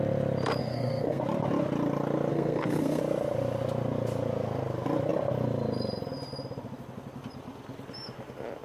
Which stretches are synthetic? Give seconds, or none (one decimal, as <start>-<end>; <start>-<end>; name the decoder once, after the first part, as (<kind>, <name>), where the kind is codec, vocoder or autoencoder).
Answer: 0.6-1.2 (codec, SNAC); 2.3-3.0